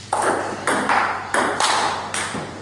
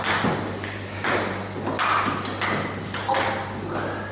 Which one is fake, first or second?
first